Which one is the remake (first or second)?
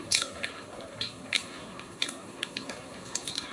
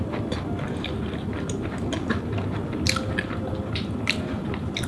first